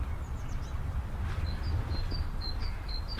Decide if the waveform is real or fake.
real